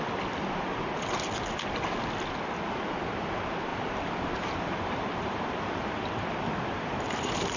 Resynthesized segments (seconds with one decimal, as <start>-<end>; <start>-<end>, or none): 3.7-5.5